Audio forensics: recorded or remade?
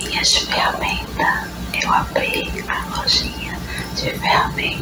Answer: recorded